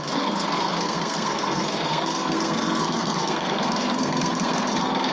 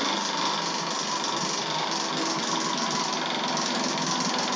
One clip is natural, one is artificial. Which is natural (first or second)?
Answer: second